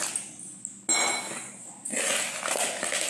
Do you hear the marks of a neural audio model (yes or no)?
no